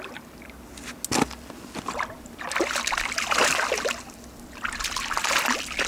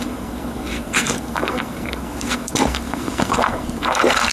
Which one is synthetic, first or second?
second